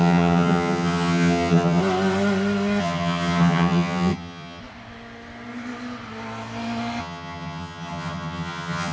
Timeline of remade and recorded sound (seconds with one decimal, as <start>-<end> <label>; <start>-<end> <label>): 0.0-1.8 remade; 1.8-2.8 recorded; 2.8-4.6 remade; 4.6-7.0 recorded; 7.0-8.9 remade